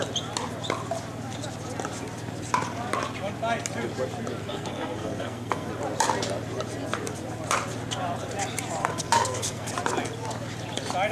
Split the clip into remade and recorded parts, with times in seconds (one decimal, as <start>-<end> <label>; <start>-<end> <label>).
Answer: 0.0-4.4 recorded; 4.4-5.7 remade; 5.7-8.8 recorded; 8.8-9.7 remade; 9.7-11.1 recorded